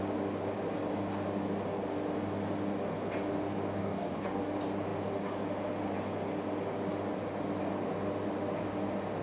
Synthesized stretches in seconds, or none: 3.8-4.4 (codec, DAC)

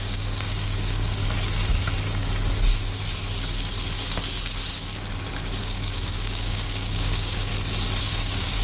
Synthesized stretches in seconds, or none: 0.0-1.2 (codec, DAC); 5.6-7.5; 8.0-8.6

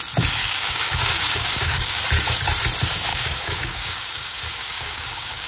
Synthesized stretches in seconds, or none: 0.4-2.0 (codec, DAC); 3.1-5.5

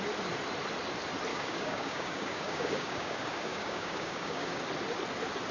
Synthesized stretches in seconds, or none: 1.3-4.6 (codec, DAC)

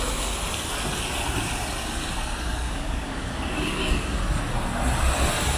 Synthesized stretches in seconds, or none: 2.5-4.2 (codec, DAC)

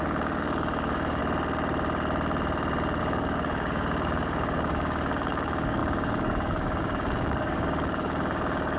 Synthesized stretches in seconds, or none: 0.0-1.2 (codec, DAC); 3.0-8.8

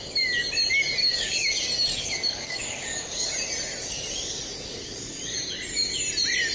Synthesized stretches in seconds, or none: 1.0-1.5 (codec, DAC); 1.9-3.3; 3.8-5.4

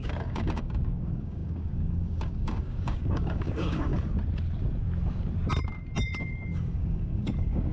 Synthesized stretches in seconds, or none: 0.0-3.9 (codec, DAC); 6.2-7.7